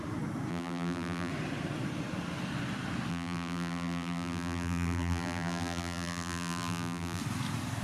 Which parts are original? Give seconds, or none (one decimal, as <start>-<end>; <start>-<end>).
0.0-0.5; 1.3-3.1; 7.2-7.8